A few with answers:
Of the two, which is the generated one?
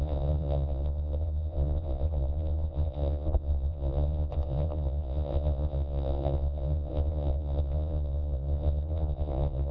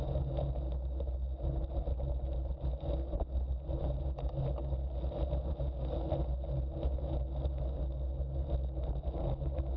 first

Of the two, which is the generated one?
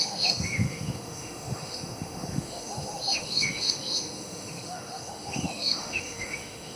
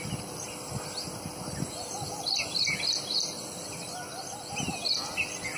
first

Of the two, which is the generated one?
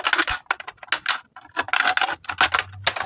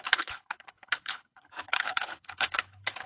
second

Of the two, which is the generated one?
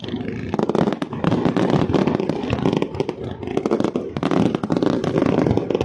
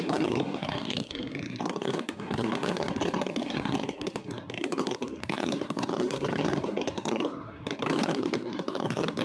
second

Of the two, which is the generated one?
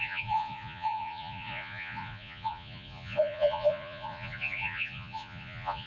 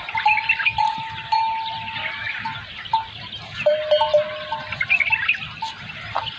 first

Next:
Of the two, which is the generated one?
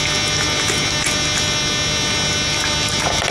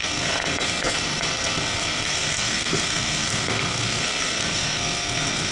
second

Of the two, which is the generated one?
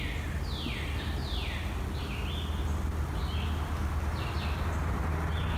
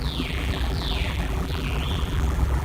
second